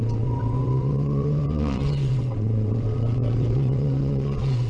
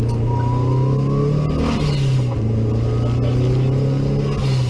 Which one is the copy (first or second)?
first